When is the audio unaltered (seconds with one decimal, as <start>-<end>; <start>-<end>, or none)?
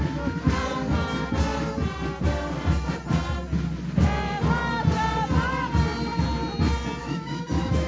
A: 0.0-7.0